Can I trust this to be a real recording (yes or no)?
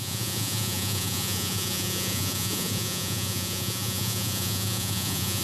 no